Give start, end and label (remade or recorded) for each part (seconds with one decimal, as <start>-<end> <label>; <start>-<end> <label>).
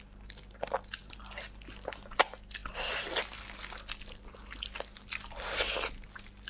0.0-6.5 recorded